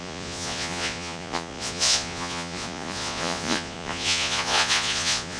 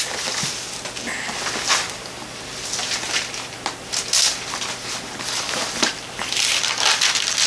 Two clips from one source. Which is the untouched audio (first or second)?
second